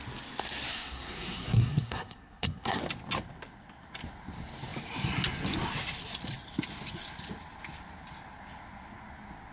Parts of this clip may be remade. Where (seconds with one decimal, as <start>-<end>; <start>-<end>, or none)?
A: 0.7-2.8